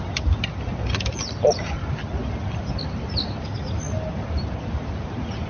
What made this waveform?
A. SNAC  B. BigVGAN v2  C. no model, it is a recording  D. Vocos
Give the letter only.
C